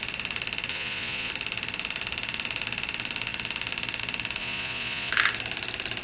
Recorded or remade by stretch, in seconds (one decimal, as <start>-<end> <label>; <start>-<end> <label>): 0.0-0.7 recorded; 0.7-1.3 remade; 1.3-4.4 recorded; 4.4-5.1 remade; 5.1-6.0 recorded